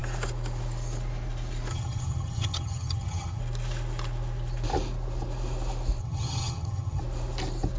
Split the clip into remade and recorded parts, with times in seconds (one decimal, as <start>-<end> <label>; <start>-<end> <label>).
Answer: 0.0-1.7 recorded; 1.7-3.4 remade; 3.4-6.0 recorded; 6.0-7.0 remade; 7.0-7.8 recorded